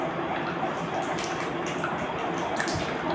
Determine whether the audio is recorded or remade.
recorded